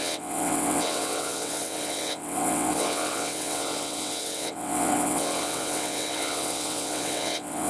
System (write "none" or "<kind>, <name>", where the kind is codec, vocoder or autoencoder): vocoder, WaveNeXt